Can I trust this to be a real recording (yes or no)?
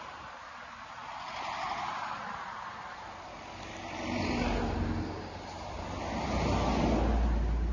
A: yes